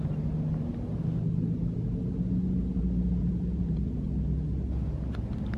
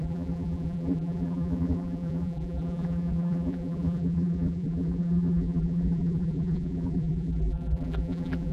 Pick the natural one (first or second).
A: first